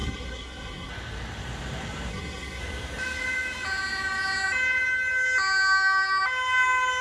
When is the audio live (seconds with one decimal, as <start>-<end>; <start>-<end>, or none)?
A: 0.9-2.1; 2.6-7.0